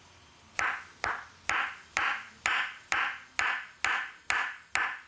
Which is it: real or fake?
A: real